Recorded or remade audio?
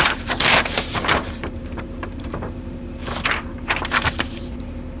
remade